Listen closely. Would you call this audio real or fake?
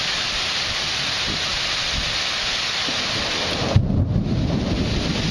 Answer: real